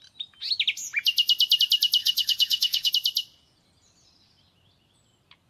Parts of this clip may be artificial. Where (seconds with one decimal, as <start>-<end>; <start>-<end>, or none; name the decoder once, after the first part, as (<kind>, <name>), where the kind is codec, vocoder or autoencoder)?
2.0-2.9 (autoencoder, DAC-VAE)